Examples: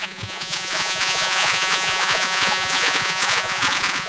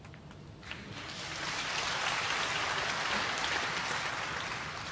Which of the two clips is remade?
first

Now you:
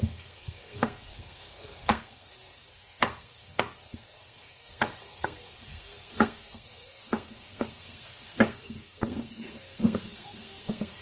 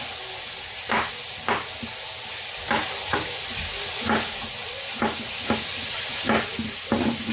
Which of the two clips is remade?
first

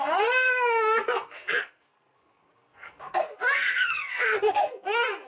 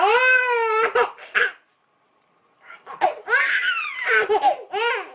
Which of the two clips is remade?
first